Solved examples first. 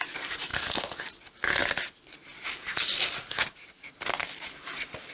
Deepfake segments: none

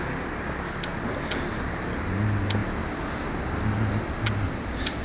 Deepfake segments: none

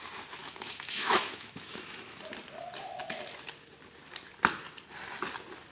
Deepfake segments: 0.4-2.2 (autoencoder, DAC-VAE)

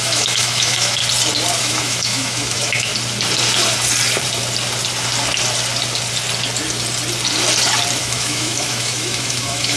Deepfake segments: 0.0-1.0 (autoencoder, DAC-VAE); 1.6-2.9; 8.0-9.8

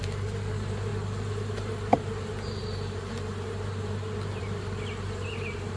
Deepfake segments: none